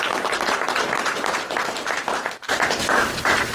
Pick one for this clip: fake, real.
fake